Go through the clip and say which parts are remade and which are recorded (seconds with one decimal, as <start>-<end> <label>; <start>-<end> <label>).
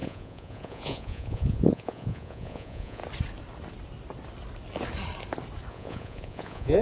0.0-3.0 remade; 3.0-5.7 recorded; 5.7-6.8 remade